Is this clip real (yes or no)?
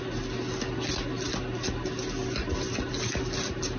yes